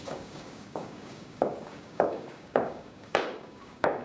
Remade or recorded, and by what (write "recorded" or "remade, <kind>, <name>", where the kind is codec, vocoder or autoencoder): remade, codec, DAC